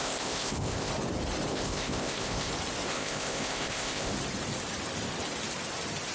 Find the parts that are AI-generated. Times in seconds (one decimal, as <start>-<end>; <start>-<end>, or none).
0.0-0.9; 1.5-2.5; 2.9-4.1